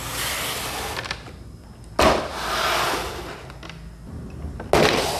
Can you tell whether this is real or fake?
real